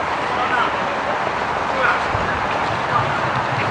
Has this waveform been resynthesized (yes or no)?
no